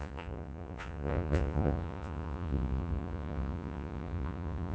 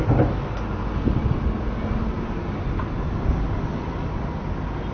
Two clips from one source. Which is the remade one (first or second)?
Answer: first